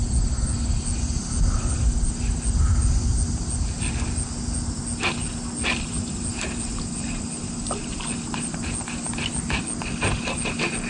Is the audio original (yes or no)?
yes